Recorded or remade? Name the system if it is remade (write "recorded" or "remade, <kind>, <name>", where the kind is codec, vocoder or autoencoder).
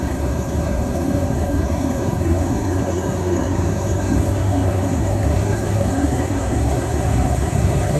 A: remade, codec, SNAC